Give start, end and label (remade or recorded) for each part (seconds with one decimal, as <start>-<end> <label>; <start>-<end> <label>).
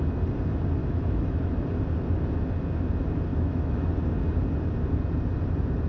0.0-0.8 recorded; 0.8-1.4 remade; 1.4-3.3 recorded; 3.3-3.9 remade; 3.9-5.9 recorded